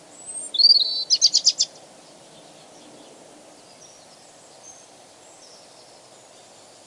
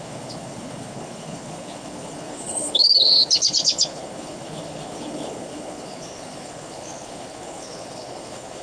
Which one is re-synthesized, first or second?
second